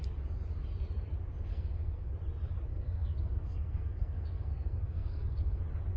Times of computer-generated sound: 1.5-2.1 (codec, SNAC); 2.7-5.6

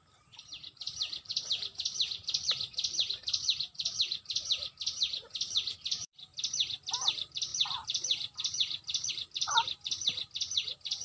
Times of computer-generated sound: 0.0-6.3 (vocoder, BigVGAN v2); 7.0-11.0